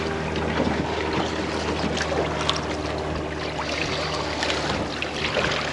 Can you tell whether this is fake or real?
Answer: real